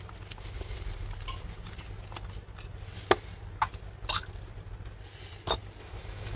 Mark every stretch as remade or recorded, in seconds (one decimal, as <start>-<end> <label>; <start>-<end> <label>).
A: 0.0-5.8 recorded; 5.8-6.4 remade